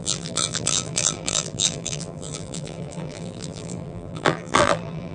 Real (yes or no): no